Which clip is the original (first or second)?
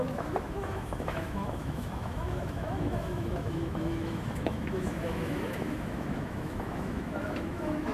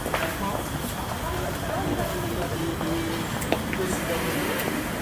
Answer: second